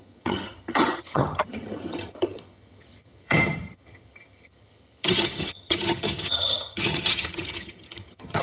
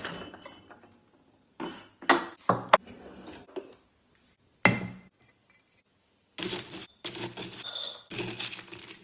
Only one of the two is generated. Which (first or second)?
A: first